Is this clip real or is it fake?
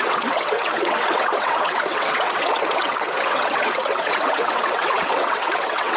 fake